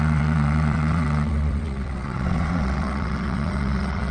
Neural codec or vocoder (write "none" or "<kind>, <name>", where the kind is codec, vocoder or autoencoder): vocoder, WaveNeXt